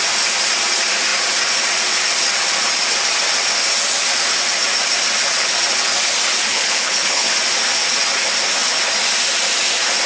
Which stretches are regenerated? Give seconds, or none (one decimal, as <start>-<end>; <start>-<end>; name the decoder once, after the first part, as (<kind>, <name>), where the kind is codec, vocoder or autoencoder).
6.5-7.3 (codec, HILCodec)